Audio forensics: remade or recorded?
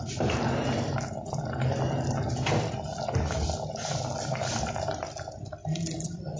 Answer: recorded